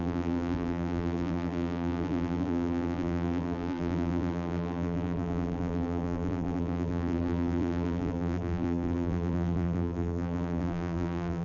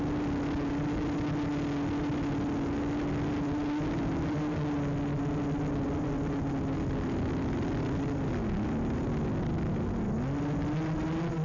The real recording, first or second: second